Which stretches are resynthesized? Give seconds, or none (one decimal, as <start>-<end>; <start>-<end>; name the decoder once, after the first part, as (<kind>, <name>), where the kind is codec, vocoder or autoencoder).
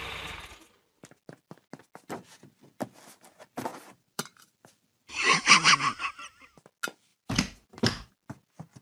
3.7-4.4 (vocoder, BigVGAN v2); 7.1-8.1